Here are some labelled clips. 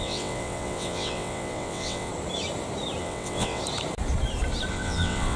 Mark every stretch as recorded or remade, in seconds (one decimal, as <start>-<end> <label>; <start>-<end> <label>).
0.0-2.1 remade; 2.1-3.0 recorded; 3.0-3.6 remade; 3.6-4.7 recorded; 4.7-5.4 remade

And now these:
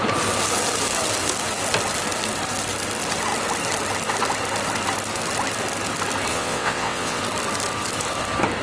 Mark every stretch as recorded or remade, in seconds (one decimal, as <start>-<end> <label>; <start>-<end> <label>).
0.0-6.3 recorded; 6.3-7.2 remade; 7.2-8.6 recorded

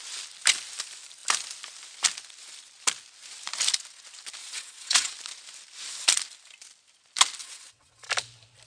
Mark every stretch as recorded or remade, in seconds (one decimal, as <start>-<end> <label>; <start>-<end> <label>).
0.0-4.4 recorded; 4.4-5.1 remade; 5.1-7.4 recorded; 7.4-8.1 remade; 8.1-8.7 recorded

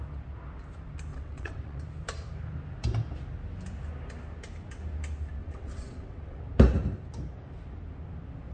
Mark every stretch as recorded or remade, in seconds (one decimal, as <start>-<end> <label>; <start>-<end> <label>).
0.0-1.1 recorded; 1.1-1.8 remade; 1.8-5.4 recorded; 5.4-6.4 remade; 6.4-8.5 recorded

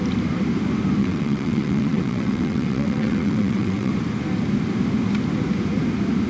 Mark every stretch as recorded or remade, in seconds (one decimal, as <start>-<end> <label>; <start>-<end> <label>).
0.0-1.0 recorded; 1.0-3.9 remade; 3.9-6.3 recorded